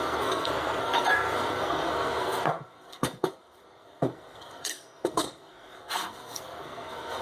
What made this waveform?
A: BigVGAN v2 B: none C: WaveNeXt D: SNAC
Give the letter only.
D